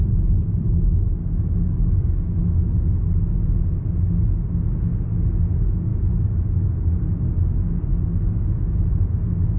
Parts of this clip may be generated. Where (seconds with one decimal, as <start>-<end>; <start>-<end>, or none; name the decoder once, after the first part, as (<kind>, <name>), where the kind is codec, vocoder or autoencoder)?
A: 0.0-0.7 (vocoder, BigVGAN v2)